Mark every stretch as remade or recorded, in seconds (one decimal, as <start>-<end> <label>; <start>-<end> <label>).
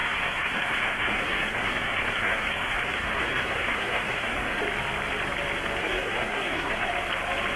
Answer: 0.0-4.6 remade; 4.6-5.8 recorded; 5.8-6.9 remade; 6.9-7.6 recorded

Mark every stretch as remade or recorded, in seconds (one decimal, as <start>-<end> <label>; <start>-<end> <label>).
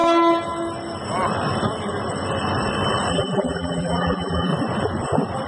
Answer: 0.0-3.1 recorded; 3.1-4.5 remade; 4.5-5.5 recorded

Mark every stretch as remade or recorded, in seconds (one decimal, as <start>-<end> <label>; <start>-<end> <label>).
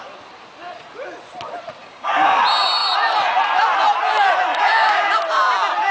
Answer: 0.0-1.8 recorded; 1.8-2.4 remade; 2.4-4.5 recorded; 4.5-5.2 remade; 5.2-5.9 recorded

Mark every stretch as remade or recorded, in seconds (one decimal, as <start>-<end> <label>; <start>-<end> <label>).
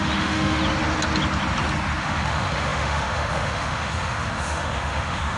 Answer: 0.0-0.6 remade; 0.6-2.0 recorded; 2.0-5.4 remade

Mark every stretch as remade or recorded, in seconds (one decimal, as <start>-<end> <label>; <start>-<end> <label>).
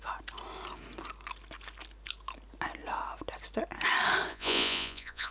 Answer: 0.0-4.3 recorded; 4.3-5.3 remade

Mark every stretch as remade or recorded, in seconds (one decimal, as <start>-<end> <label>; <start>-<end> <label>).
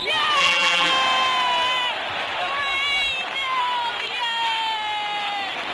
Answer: 0.0-0.4 recorded; 0.4-0.9 remade; 0.9-5.7 recorded